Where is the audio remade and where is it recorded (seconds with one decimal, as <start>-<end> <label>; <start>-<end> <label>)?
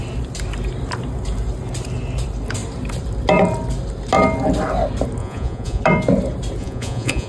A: 0.0-5.2 recorded; 5.2-5.8 remade; 5.8-6.6 recorded; 6.6-7.3 remade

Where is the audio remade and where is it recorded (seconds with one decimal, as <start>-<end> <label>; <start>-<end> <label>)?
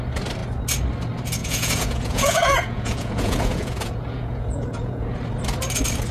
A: 0.0-1.4 recorded; 1.4-5.1 remade; 5.1-6.1 recorded